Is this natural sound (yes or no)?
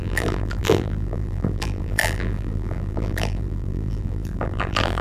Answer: no